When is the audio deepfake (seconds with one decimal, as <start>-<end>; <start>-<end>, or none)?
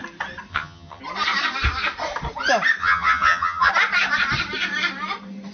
0.5-1.0; 2.8-3.7